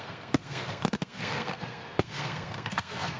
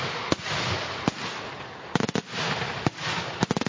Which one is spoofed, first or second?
first